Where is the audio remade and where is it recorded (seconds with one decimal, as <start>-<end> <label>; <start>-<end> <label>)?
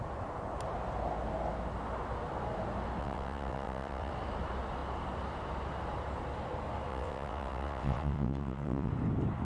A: 0.0-3.0 recorded; 3.0-4.1 remade; 4.1-6.9 recorded; 6.9-8.9 remade; 8.9-9.4 recorded